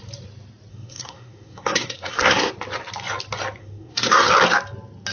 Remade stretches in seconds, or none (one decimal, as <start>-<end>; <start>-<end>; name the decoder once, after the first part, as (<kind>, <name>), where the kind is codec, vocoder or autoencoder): 0.7-2.5 (codec, SNAC); 3.6-4.3